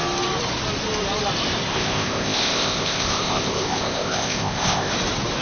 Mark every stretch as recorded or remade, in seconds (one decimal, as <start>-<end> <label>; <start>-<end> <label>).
0.0-1.7 recorded; 1.7-4.9 remade; 4.9-5.4 recorded